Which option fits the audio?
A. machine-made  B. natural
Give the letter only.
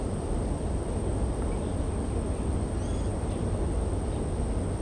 B